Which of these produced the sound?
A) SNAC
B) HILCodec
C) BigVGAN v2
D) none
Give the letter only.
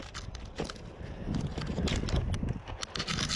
D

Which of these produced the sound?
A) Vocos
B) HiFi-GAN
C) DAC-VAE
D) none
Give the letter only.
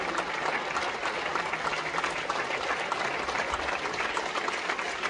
D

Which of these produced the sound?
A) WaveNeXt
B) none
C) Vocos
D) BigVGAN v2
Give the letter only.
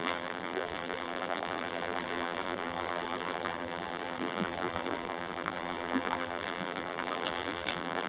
D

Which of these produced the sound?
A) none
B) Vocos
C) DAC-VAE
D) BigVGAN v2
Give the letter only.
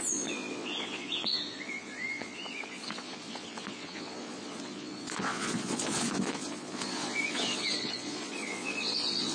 B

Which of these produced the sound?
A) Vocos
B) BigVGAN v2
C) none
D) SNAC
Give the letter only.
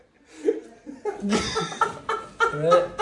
C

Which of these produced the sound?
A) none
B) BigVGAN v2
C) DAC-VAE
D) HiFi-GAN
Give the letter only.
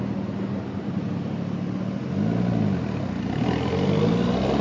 A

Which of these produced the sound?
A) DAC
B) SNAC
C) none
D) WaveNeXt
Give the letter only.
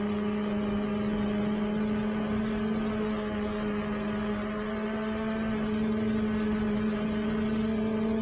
C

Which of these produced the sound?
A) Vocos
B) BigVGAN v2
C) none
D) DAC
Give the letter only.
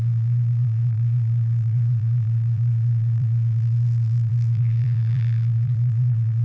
B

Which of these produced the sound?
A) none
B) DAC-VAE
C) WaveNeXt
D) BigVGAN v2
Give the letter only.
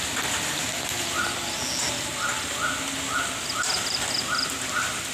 A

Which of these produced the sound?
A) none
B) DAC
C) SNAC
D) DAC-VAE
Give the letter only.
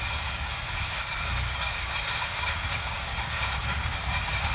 B